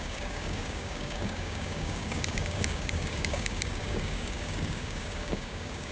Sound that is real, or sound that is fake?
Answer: fake